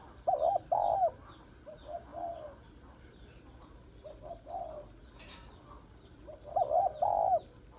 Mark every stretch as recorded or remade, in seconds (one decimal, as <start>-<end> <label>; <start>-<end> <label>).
0.0-7.8 recorded